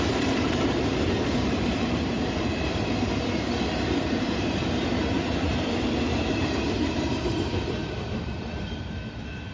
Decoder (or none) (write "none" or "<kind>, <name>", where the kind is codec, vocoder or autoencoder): vocoder, BigVGAN v2